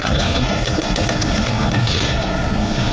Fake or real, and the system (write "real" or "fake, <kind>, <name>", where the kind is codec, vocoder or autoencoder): fake, codec, SNAC